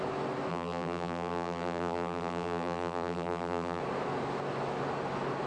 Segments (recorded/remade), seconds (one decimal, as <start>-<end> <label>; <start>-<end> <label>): 0.0-0.5 recorded; 0.5-3.8 remade; 3.8-5.5 recorded